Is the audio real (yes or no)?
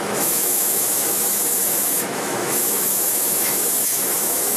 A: no